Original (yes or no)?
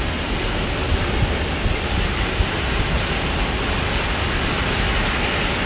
yes